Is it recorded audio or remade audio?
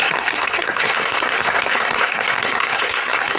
remade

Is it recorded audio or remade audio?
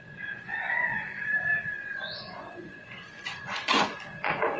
remade